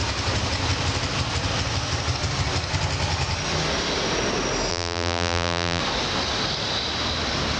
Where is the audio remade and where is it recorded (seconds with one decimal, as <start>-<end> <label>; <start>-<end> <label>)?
0.0-4.7 recorded; 4.7-5.8 remade; 5.8-7.6 recorded